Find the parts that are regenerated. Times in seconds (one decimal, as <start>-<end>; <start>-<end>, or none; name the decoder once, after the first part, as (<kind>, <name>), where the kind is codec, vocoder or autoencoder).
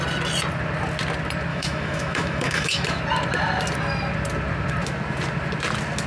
1.5-3.0 (autoencoder, DAC-VAE)